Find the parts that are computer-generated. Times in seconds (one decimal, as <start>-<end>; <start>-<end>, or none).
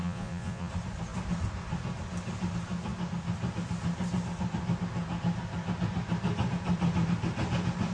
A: 0.0-0.7